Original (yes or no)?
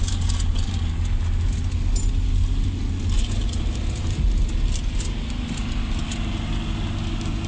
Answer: yes